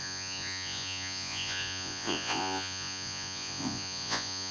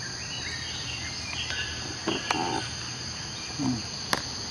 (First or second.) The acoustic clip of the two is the second